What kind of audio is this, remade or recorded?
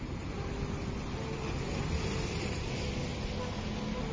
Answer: recorded